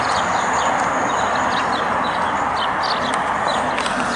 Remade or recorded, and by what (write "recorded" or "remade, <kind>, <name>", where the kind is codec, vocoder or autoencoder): recorded